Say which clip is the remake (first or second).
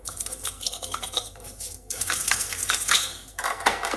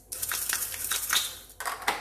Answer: first